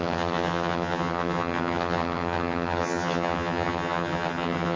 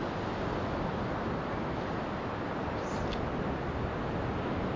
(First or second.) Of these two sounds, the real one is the second